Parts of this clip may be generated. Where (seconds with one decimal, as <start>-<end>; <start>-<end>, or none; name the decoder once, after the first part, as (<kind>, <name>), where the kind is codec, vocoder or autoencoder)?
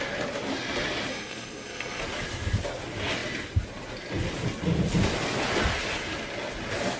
1.1-2.0 (codec, SNAC)